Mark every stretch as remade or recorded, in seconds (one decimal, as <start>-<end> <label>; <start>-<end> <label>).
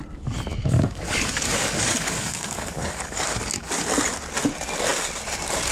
0.0-0.5 recorded; 0.5-3.7 remade; 3.7-5.7 recorded